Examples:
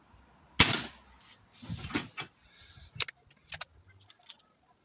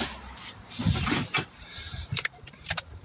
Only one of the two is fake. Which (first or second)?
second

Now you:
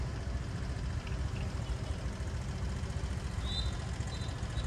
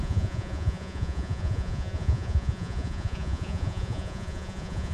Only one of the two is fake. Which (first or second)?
second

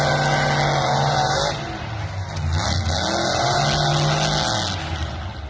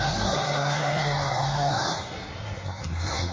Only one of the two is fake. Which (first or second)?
second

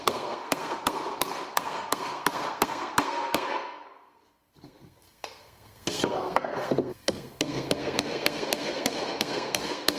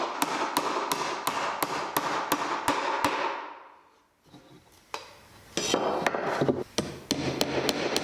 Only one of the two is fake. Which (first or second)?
first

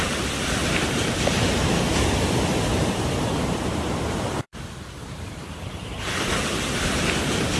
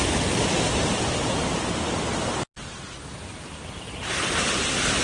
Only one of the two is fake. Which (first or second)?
first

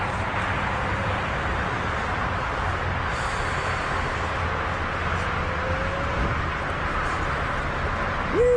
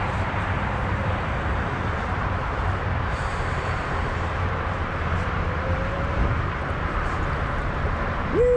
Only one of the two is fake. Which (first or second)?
second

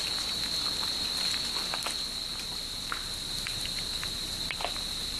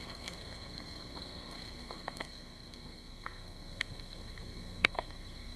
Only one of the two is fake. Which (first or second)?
second